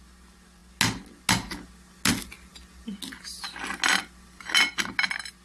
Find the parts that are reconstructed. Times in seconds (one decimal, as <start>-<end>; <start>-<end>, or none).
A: none